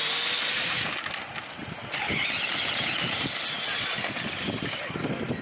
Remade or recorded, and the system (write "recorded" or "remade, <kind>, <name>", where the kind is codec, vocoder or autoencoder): recorded